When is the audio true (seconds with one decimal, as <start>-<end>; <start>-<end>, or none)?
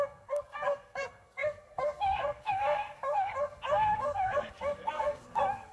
none